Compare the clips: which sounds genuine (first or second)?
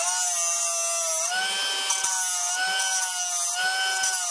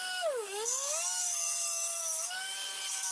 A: first